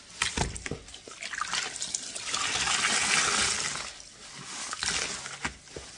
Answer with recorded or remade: recorded